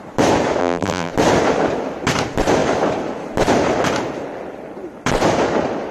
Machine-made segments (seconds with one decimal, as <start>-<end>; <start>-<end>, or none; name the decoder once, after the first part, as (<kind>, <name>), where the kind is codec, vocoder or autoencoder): 0.6-1.1 (vocoder, BigVGAN v2)

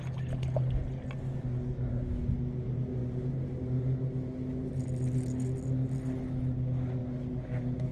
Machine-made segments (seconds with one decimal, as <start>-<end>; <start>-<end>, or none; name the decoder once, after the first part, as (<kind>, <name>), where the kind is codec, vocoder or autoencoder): none

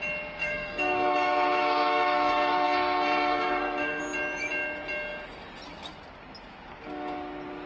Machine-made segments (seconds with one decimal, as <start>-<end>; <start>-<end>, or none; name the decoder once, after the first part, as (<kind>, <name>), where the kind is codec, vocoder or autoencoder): 0.4-4.0 (codec, SNAC)

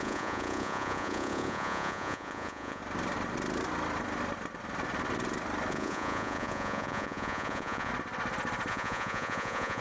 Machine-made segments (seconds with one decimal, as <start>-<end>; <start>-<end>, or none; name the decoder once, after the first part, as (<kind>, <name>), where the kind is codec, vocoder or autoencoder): 0.0-2.8 (vocoder, Vocos); 5.7-7.9; 8.7-9.8

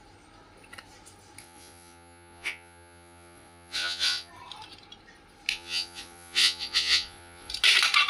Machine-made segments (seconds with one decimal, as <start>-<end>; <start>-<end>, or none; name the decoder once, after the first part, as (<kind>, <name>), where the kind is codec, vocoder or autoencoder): 1.4-4.3 (vocoder, Vocos); 5.5-7.5